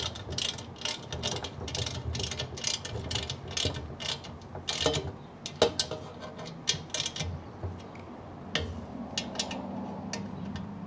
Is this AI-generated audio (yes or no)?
no